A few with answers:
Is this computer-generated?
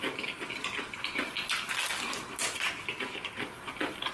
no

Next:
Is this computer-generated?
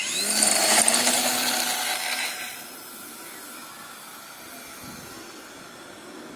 no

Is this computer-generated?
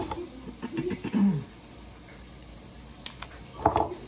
no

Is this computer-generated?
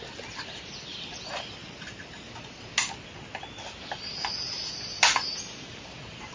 no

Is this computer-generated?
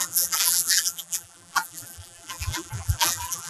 yes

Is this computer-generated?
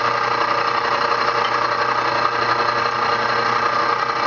no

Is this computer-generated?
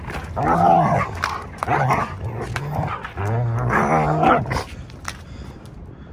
no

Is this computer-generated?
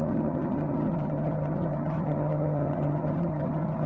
yes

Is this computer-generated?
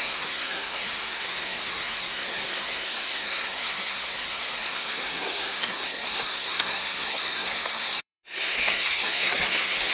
yes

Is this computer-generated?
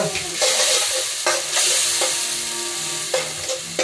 no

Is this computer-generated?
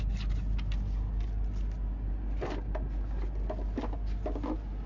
no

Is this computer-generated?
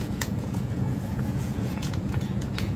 yes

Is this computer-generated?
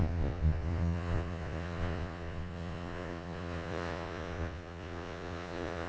yes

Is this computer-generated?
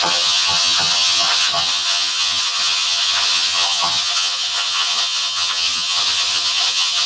yes